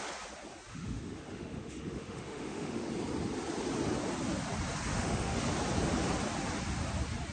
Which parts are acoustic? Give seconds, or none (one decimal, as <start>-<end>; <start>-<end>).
0.0-0.7; 2.9-4.9; 5.4-7.3